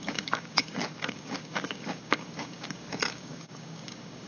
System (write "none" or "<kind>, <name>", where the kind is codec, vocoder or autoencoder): codec, DAC